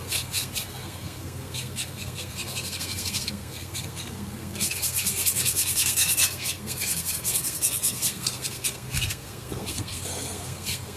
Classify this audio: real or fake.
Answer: fake